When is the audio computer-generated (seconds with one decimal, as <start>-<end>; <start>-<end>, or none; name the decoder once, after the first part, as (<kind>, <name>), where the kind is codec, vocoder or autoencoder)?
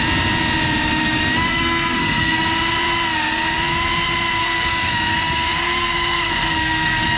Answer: 1.5-2.4 (codec, SNAC); 4.4-7.2